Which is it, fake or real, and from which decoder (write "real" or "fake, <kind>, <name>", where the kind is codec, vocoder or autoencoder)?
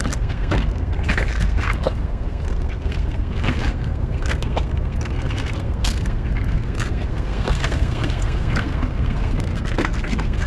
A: fake, codec, SNAC